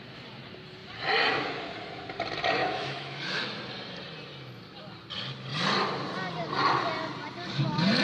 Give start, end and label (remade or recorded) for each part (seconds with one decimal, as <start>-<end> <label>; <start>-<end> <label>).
0.0-2.6 recorded; 2.6-3.6 remade; 3.6-8.0 recorded